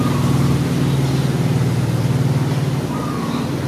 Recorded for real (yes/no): yes